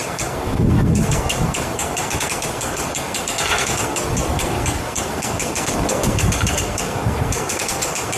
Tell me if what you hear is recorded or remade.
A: remade